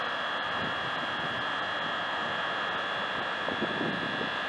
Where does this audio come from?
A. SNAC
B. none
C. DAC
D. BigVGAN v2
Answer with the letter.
B